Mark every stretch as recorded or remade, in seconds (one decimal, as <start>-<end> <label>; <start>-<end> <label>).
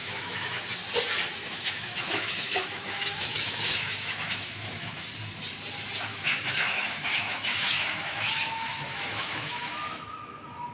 0.0-0.7 remade; 0.7-1.4 recorded; 1.4-5.0 remade; 5.0-6.1 recorded; 6.1-10.7 remade